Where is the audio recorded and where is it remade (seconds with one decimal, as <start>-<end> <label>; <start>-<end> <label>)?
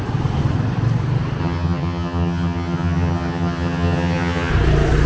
0.0-1.4 recorded; 1.4-4.5 remade; 4.5-5.1 recorded